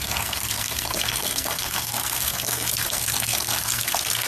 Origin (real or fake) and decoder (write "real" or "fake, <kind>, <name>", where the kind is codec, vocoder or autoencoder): fake, codec, SNAC